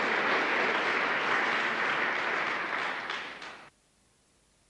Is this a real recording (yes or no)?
yes